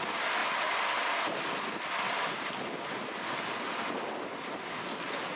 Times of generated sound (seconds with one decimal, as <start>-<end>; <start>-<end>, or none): none